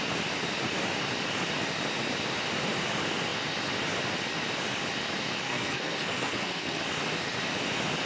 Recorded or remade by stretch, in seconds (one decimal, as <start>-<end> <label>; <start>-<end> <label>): 0.0-5.4 recorded; 5.4-6.8 remade; 6.8-8.1 recorded